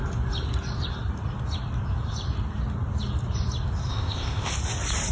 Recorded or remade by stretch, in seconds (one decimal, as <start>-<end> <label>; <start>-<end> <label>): 0.0-3.9 recorded; 3.9-4.5 remade; 4.5-5.1 recorded